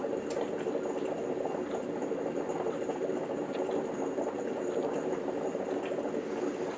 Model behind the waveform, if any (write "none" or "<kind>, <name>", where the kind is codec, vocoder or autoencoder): none